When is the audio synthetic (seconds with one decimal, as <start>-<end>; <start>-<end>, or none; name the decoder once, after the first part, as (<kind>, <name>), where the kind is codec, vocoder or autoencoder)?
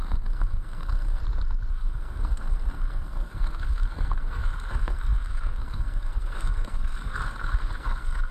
0.0-1.2 (codec, SNAC); 1.7-8.3